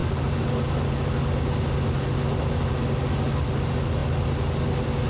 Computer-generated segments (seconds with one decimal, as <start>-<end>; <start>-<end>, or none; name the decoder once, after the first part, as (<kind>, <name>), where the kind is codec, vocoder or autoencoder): none